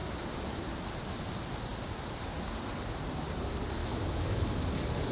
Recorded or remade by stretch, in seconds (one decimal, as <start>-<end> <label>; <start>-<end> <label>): 0.0-3.8 recorded; 3.8-4.4 remade; 4.4-5.1 recorded